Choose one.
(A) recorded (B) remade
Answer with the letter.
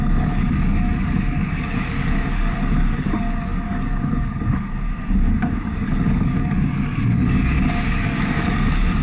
B